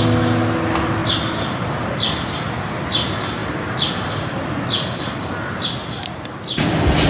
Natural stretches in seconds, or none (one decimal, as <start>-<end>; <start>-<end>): 0.0-7.1